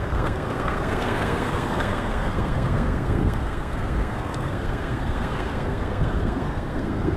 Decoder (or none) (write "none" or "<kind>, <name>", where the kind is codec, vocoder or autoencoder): codec, SNAC